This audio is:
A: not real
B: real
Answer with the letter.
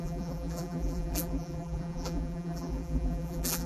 A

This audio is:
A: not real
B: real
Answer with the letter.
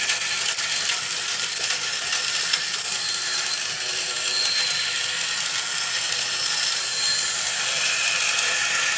A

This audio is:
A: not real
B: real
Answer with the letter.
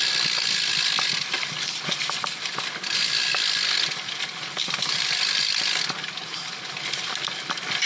B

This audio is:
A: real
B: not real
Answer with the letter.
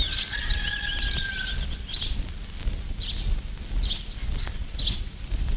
A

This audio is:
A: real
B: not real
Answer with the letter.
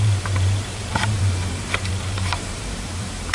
B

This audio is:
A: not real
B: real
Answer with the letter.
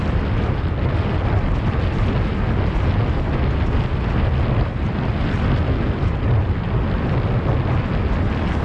B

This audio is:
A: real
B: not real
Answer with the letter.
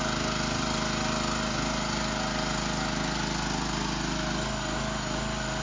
A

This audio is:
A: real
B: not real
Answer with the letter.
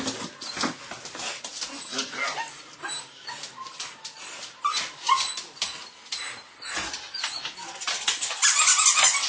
A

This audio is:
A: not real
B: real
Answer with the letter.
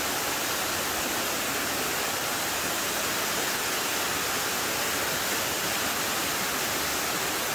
B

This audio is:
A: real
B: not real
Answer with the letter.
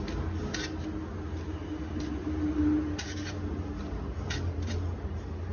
A